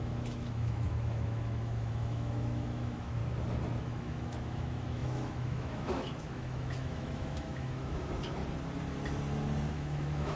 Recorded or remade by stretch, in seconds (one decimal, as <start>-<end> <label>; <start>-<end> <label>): 0.0-3.2 remade; 3.2-3.8 recorded; 3.8-8.4 remade; 8.4-9.7 recorded; 9.7-10.4 remade